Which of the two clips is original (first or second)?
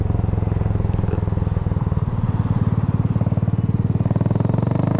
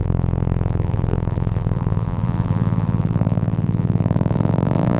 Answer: first